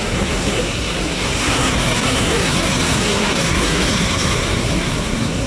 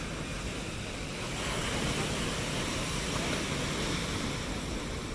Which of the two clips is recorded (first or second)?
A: second